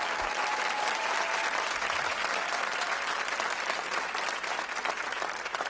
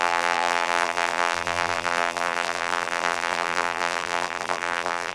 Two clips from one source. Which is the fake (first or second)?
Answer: second